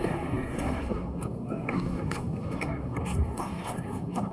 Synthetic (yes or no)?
yes